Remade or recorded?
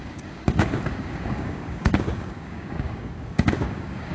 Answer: remade